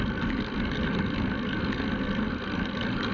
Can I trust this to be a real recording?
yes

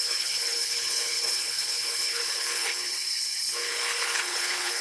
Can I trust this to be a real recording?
no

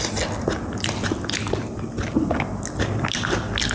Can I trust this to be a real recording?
yes